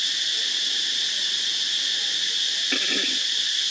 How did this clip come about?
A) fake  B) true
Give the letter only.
B